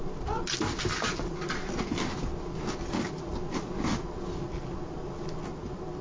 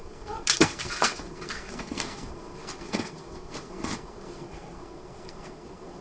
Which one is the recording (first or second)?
first